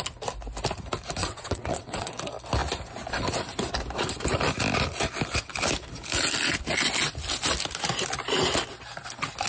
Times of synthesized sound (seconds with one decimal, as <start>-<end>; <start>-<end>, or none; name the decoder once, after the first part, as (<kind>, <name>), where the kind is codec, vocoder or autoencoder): 1.2-2.1 (vocoder, WaveNeXt)